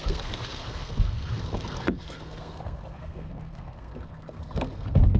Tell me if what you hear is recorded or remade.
remade